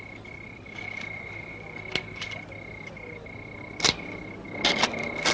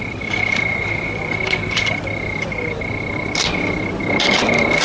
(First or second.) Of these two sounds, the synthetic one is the second